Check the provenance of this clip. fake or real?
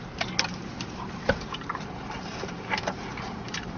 fake